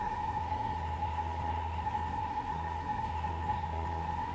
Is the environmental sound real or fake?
fake